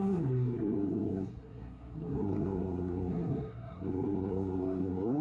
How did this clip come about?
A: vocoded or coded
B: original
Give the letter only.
A